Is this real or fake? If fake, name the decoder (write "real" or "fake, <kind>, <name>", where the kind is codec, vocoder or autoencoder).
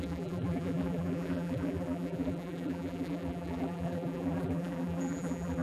fake, vocoder, BigVGAN v2